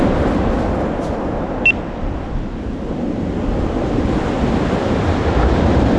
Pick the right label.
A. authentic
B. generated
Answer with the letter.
A